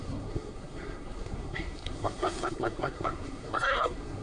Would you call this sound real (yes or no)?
no